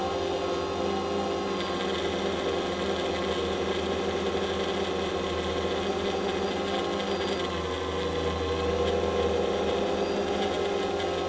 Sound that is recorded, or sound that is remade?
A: recorded